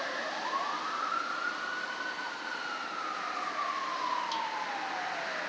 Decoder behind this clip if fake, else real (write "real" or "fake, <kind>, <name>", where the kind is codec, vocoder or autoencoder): real